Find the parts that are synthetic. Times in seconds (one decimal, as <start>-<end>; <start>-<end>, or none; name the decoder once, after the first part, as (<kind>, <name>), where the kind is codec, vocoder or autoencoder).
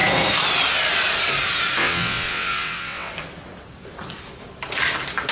1.8-3.1 (vocoder, WaveNeXt)